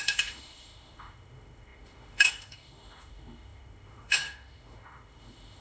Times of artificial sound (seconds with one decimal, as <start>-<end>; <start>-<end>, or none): 0.0-5.6